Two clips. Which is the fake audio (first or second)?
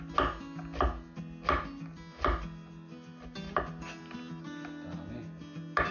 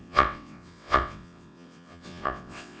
second